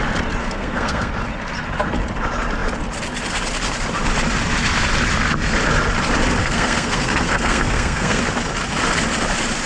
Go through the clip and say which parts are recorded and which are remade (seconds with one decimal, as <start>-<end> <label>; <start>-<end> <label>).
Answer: 0.0-0.4 recorded; 0.4-1.1 remade; 1.1-6.4 recorded; 6.4-8.2 remade; 8.2-9.7 recorded